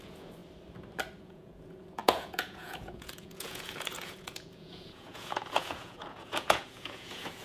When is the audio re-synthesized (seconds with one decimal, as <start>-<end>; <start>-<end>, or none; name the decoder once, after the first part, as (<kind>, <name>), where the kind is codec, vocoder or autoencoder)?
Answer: 0.0-0.4 (vocoder, Vocos); 1.2-7.4